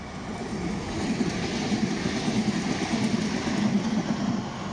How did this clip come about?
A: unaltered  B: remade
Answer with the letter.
A